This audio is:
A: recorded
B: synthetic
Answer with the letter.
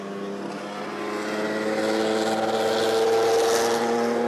A